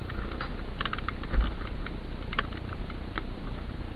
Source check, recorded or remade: recorded